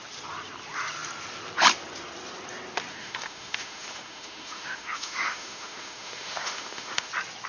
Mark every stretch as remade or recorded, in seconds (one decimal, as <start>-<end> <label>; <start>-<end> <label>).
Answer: 0.0-2.9 recorded; 2.9-7.1 remade; 7.1-7.5 recorded